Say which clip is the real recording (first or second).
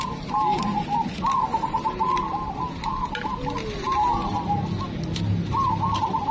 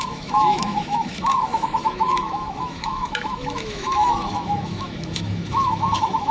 first